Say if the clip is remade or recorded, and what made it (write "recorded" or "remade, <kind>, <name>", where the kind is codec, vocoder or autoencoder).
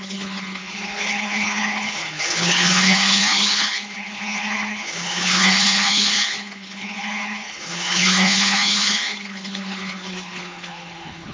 remade, codec, HILCodec